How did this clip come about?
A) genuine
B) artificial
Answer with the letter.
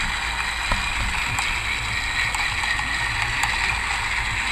A